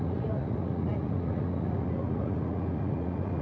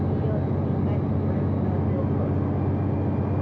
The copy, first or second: first